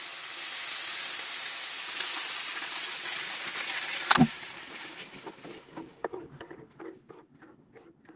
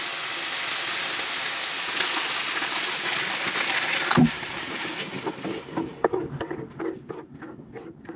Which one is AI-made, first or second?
first